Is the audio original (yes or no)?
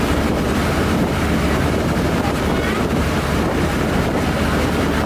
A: no